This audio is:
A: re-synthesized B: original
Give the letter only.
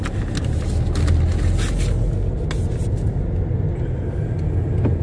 B